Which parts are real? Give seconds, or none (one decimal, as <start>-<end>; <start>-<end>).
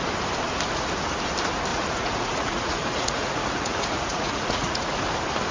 0.0-1.7; 5.0-5.5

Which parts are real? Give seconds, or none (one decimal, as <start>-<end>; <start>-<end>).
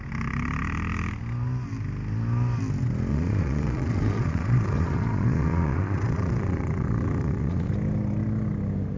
0.0-3.1; 7.7-9.0